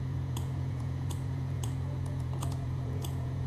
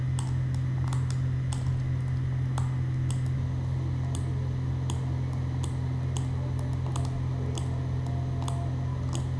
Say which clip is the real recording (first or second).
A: second